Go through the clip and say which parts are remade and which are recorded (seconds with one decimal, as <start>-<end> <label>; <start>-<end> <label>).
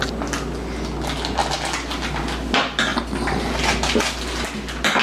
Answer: 0.0-5.0 recorded